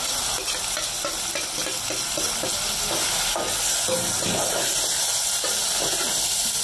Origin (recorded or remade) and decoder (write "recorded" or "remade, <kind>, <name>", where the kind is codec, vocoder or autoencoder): recorded